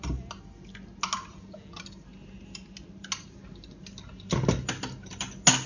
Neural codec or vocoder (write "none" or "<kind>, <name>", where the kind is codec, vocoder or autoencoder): none